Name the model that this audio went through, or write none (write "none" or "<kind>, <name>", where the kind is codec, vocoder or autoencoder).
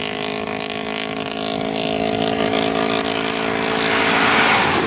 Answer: none